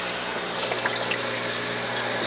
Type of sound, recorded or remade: recorded